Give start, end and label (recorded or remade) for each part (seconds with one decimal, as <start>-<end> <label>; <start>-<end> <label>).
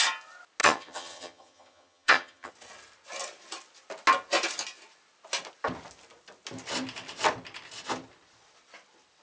0.0-0.6 recorded; 0.6-2.5 remade; 2.5-9.2 recorded